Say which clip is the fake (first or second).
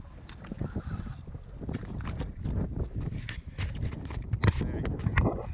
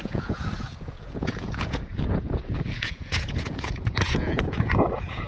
second